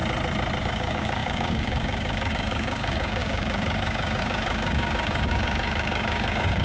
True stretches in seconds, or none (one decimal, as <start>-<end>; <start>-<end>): 0.0-0.6